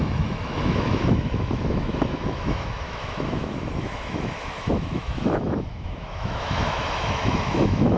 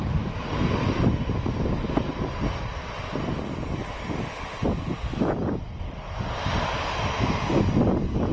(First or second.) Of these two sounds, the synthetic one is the first